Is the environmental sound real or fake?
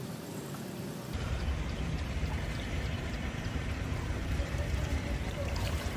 fake